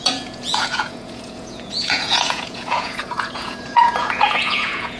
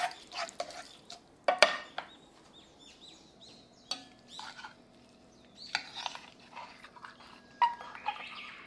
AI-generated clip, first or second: first